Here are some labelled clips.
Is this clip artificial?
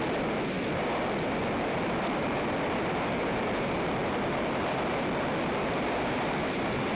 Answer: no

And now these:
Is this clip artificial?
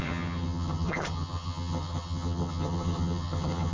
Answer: yes